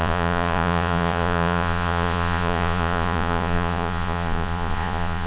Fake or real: fake